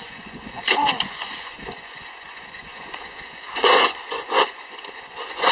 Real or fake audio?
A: fake